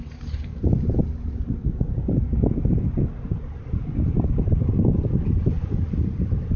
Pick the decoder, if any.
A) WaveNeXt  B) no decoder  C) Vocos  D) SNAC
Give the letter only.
B